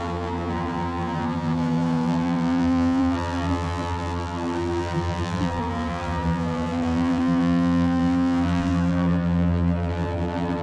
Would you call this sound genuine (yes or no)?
no